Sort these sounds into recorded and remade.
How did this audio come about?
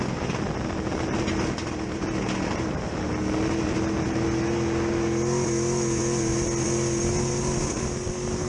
recorded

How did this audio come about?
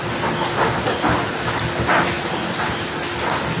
recorded